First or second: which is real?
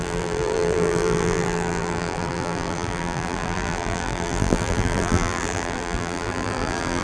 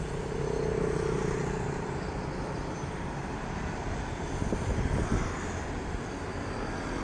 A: second